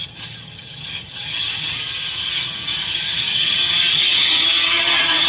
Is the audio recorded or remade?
remade